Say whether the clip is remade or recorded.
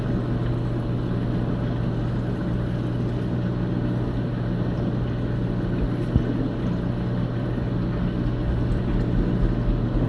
recorded